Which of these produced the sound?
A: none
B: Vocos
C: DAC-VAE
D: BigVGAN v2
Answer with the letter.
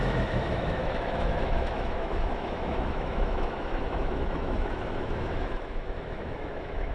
C